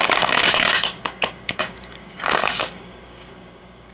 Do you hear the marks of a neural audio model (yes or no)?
yes